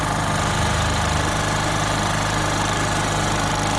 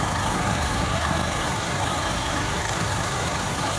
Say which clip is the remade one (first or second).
second